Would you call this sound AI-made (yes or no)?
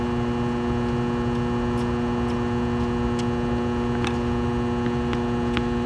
no